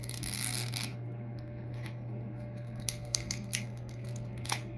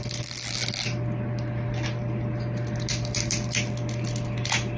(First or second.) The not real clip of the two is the first